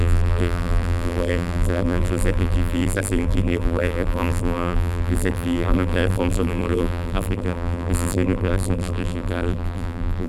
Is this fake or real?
fake